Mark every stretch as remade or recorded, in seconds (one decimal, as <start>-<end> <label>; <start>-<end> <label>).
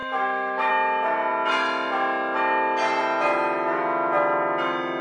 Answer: 0.0-0.7 remade; 0.7-5.0 recorded